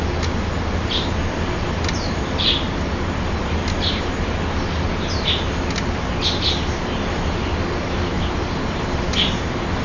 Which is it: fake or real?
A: real